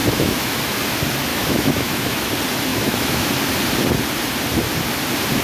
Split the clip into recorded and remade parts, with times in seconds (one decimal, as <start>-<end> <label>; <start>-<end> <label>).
0.0-0.6 remade; 0.6-1.3 recorded; 1.3-2.3 remade; 2.3-2.7 recorded; 2.7-3.3 remade; 3.3-5.4 recorded